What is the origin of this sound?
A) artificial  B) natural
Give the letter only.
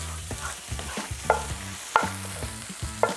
A